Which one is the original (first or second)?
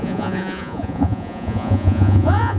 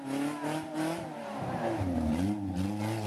second